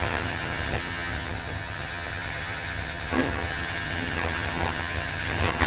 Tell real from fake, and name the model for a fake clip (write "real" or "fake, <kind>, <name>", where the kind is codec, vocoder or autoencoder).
fake, vocoder, HiFi-GAN